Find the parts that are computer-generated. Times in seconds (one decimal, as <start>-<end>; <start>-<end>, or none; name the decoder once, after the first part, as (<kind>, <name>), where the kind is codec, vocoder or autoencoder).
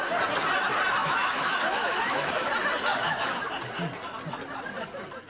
1.0-2.5 (autoencoder, DAC-VAE); 2.9-3.5